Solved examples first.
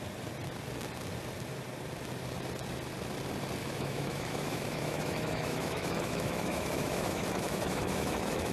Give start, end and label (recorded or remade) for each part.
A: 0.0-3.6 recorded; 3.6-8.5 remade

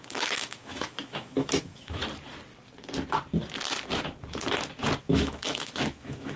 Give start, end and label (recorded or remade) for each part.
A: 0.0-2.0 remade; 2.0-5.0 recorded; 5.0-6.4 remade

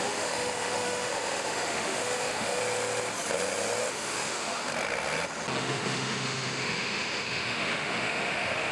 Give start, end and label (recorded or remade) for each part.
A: 0.0-2.6 remade; 2.6-3.9 recorded; 3.9-4.7 remade; 4.7-5.6 recorded; 5.6-8.7 remade